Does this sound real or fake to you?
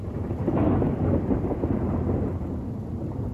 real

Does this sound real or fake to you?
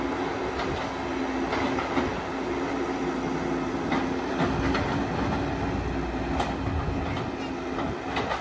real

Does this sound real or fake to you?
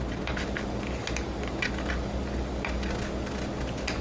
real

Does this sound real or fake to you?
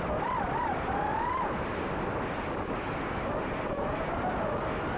real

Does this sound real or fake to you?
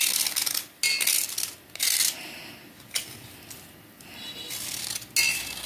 real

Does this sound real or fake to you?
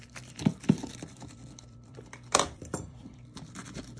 fake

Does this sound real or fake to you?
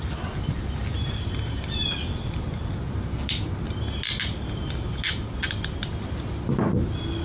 real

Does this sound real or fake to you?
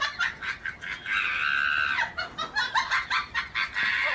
real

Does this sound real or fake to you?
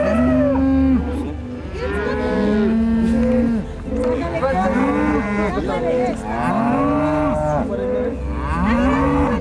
real